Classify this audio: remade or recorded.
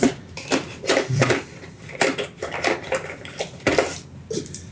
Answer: remade